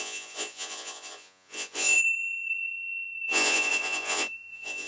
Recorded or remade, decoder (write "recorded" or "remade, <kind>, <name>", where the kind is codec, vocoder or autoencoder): remade, vocoder, Vocos